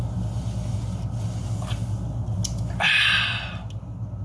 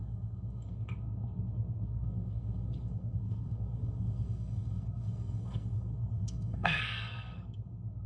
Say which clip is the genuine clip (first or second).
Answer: first